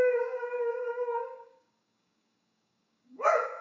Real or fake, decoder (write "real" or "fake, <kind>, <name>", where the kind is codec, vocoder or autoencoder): fake, codec, DAC